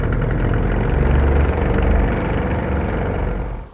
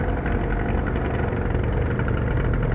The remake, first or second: first